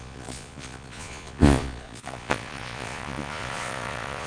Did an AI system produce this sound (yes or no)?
yes